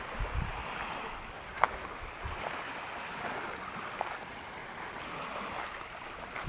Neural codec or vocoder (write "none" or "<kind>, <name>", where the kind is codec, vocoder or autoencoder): none